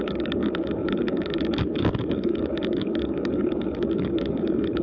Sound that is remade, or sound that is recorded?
remade